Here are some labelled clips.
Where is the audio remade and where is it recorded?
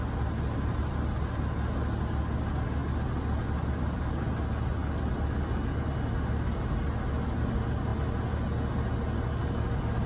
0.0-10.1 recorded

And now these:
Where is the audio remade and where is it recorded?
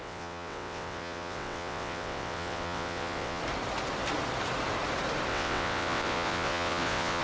0.0-3.4 remade; 3.4-5.3 recorded; 5.3-7.2 remade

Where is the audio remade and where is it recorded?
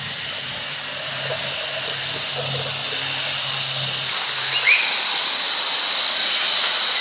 0.0-7.0 recorded